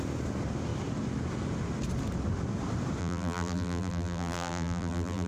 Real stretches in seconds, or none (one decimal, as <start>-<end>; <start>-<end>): 0.0-3.0